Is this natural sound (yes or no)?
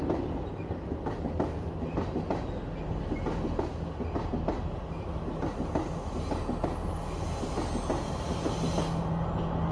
yes